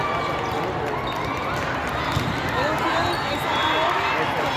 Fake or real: real